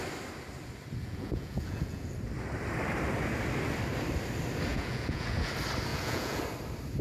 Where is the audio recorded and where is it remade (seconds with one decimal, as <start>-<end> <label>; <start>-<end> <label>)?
0.0-1.0 recorded; 1.0-2.1 remade; 2.1-4.7 recorded; 4.7-5.5 remade; 5.5-5.9 recorded; 5.9-6.4 remade; 6.4-7.0 recorded